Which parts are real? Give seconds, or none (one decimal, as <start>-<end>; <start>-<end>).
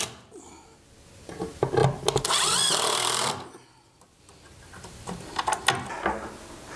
0.0-1.8; 4.3-6.8